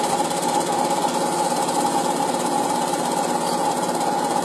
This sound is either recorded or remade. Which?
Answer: recorded